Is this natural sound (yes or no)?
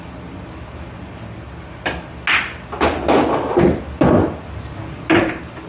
yes